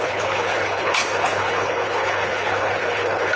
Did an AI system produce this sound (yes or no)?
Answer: yes